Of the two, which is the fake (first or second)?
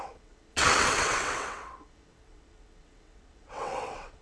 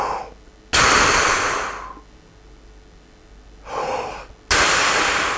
first